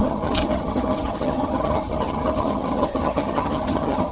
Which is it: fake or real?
fake